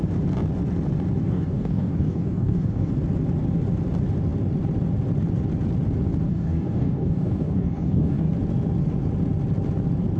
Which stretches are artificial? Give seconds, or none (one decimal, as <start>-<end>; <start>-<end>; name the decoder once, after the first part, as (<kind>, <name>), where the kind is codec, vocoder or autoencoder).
1.2-2.9 (codec, DAC); 6.3-8.3